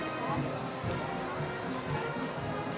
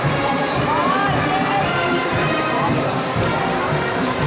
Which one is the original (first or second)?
first